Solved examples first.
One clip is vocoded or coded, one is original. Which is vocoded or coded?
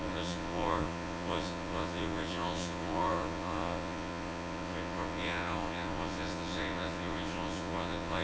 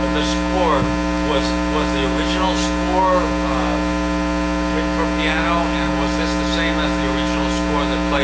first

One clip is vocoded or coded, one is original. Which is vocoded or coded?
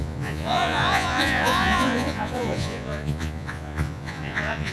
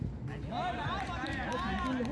first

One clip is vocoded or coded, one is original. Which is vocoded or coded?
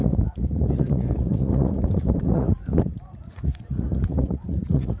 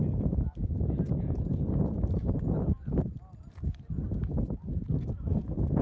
first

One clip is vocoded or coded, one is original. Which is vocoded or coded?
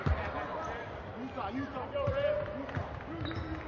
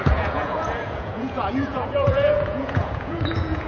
second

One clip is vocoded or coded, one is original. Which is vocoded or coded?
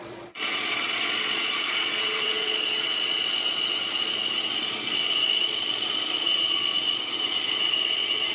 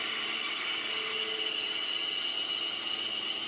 first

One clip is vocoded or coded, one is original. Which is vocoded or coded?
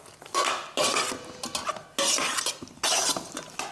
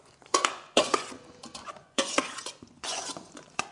second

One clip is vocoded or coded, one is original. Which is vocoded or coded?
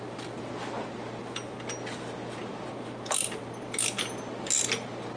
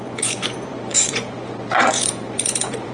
second